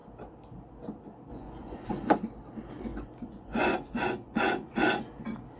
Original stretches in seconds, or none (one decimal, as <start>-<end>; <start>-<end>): 0.0-1.3; 2.1-2.9; 5.1-5.6